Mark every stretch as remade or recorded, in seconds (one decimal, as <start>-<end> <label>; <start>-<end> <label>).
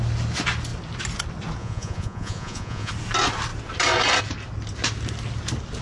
0.0-1.6 recorded; 1.6-2.9 remade; 2.9-5.8 recorded